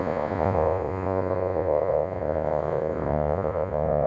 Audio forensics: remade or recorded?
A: remade